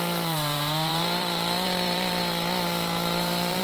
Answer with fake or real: fake